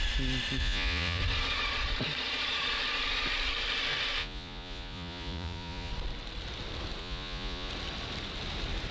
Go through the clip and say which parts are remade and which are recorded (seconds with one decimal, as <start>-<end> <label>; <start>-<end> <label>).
0.0-0.6 recorded; 0.6-1.2 remade; 1.2-4.2 recorded; 4.2-5.9 remade; 5.9-7.0 recorded; 7.0-7.7 remade; 7.7-8.9 recorded